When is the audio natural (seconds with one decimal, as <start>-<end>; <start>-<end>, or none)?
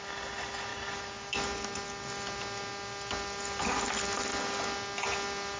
0.0-5.6